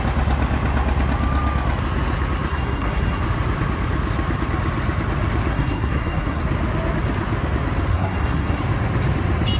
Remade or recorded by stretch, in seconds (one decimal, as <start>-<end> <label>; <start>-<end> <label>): 0.0-2.5 recorded; 2.5-3.2 remade; 3.2-5.5 recorded; 5.5-6.4 remade; 6.4-7.9 recorded; 7.9-8.6 remade; 8.6-9.6 recorded